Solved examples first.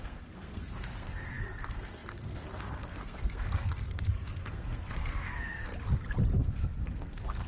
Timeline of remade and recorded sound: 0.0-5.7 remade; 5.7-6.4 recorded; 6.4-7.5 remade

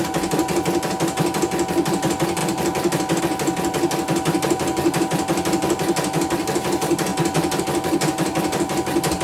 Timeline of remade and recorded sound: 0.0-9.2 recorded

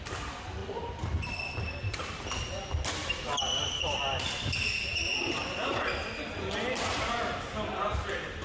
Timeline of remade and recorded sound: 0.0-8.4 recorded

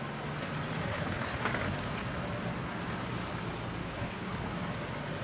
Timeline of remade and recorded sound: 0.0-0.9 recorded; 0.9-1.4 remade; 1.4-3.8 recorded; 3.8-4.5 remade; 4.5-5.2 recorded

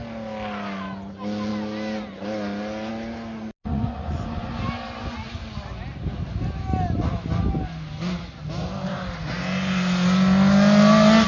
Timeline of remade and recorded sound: 0.0-3.6 recorded; 3.6-4.5 remade; 4.5-11.3 recorded